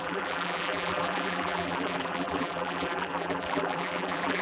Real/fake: fake